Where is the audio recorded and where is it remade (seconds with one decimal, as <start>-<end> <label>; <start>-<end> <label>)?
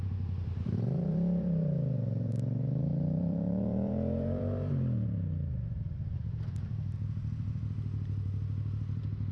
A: 0.0-9.3 remade